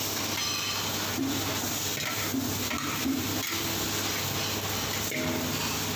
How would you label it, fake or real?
real